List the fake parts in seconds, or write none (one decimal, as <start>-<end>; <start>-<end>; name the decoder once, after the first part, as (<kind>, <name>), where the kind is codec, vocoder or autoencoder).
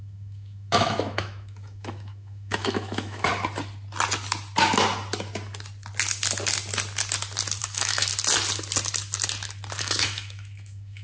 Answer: 0.0-3.3 (autoencoder, DAC-VAE); 7.6-8.1; 9.8-11.0